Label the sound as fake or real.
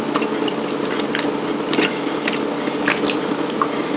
real